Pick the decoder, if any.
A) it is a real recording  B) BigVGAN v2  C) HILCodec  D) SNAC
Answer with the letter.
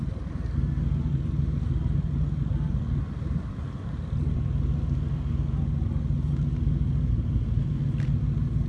A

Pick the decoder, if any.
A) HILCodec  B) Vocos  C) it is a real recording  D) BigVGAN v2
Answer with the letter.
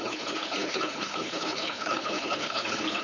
A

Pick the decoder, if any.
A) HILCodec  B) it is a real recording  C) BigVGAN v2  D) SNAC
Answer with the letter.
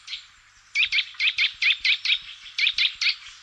B